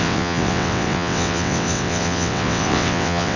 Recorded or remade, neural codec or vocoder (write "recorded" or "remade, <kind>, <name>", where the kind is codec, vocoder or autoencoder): remade, vocoder, WaveNeXt